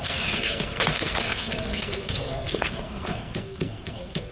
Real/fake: fake